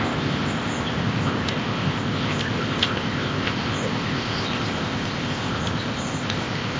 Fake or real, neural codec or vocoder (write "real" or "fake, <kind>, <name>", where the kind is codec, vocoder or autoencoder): fake, codec, ZipCodec